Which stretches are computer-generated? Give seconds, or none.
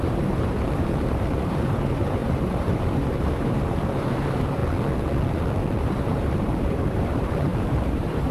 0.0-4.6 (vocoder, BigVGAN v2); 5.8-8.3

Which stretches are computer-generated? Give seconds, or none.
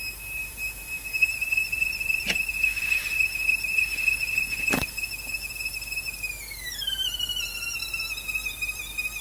0.0-7.8 (vocoder, BigVGAN v2); 8.5-9.2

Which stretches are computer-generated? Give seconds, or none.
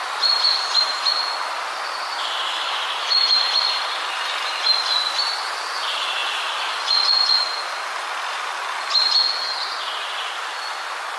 0.9-4.1 (vocoder, BigVGAN v2)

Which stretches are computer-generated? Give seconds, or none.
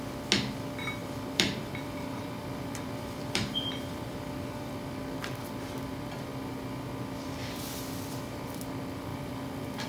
1.0-4.2 (vocoder, BigVGAN v2); 7.4-8.2; 9.1-9.9